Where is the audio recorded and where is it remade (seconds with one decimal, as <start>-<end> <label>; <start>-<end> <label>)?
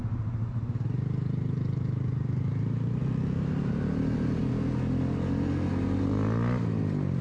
0.0-3.0 recorded; 3.0-4.5 remade; 4.5-7.2 recorded